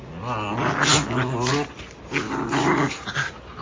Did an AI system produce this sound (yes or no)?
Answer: no